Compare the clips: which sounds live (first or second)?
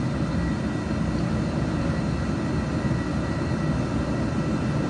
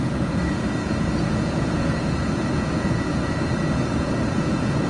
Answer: first